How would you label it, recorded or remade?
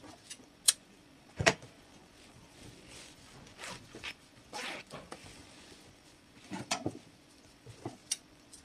remade